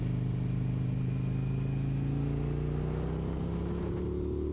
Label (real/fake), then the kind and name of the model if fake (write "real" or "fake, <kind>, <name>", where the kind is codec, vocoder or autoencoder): real